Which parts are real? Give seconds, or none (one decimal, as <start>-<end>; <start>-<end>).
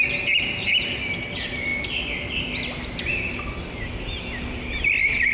0.0-5.3